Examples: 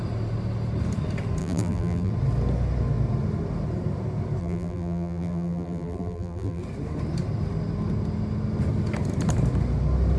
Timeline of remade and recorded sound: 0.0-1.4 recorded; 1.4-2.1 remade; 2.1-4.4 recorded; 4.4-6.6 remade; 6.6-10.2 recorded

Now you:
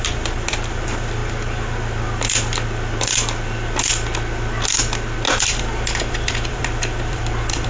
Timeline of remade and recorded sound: 0.0-1.2 remade; 1.2-5.4 recorded; 5.4-7.7 remade